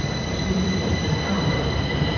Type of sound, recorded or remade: remade